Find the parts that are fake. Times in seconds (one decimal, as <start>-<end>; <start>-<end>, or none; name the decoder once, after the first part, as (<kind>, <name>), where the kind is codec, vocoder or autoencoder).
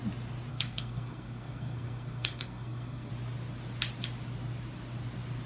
0.5-3.1 (codec, SNAC)